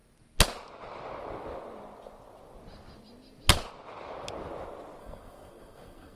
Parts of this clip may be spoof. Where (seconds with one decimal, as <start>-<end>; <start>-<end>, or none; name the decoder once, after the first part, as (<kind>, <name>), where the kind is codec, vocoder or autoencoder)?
5.0-6.2 (codec, SNAC)